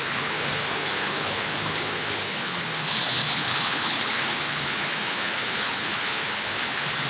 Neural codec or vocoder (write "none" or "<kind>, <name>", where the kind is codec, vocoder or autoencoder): codec, HILCodec